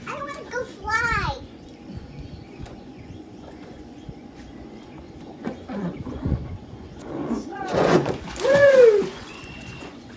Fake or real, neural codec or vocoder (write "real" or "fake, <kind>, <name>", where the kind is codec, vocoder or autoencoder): fake, vocoder, Vocos